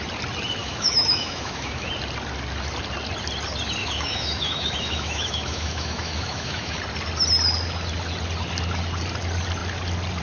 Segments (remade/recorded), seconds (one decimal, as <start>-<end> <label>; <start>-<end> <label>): 0.0-0.6 recorded; 0.6-1.9 remade; 1.9-3.8 recorded; 3.8-6.8 remade; 6.8-10.2 recorded